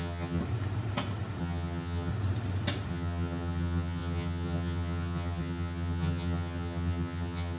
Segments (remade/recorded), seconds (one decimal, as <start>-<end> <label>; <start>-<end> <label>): 0.0-0.4 remade; 0.4-1.4 recorded; 1.4-2.1 remade; 2.1-2.9 recorded; 2.9-7.6 remade